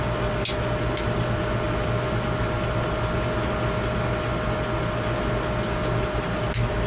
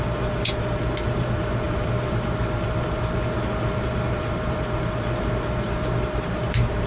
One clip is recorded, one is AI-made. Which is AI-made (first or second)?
second